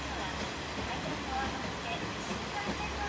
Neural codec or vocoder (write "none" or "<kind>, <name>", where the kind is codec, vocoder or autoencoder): none